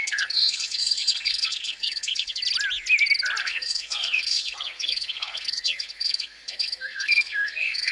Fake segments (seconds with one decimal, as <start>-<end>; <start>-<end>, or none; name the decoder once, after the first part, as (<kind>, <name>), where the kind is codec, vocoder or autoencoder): 0.0-2.4 (codec, SNAC); 3.4-7.9